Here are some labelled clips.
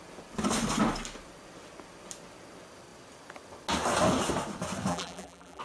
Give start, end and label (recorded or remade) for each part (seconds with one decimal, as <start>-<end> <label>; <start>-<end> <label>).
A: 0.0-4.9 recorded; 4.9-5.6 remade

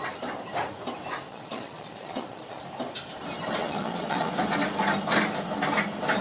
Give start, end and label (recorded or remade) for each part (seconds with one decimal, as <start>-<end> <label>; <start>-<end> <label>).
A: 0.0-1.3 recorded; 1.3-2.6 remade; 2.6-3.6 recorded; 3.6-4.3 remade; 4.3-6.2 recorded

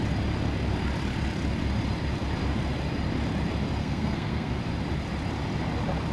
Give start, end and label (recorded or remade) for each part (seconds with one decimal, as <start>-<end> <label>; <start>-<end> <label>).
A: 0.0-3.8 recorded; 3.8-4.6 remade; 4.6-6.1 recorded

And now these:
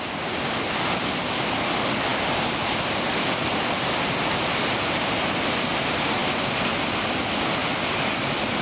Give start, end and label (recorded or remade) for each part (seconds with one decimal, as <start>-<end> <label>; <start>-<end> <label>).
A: 0.0-8.6 recorded

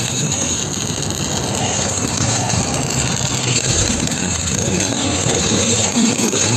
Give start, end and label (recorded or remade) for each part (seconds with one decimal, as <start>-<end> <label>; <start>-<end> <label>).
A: 0.0-0.6 remade; 0.6-1.6 recorded; 1.6-2.6 remade; 2.6-3.4 recorded; 3.4-6.6 remade

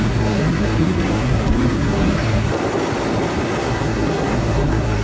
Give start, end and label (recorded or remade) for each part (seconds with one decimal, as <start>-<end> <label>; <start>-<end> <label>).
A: 0.0-2.5 remade; 2.5-3.6 recorded; 3.6-5.0 remade

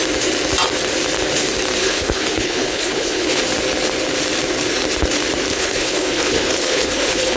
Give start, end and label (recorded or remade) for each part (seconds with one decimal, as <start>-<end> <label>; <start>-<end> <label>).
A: 0.0-1.8 recorded; 1.8-3.4 remade; 3.4-5.5 recorded; 5.5-7.4 remade